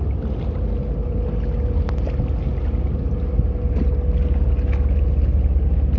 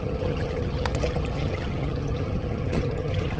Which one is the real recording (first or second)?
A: first